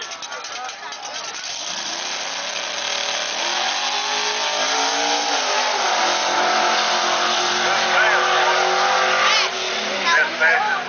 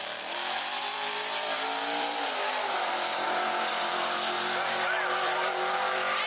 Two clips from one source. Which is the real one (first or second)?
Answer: first